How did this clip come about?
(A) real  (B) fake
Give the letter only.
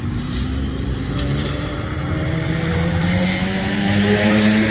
B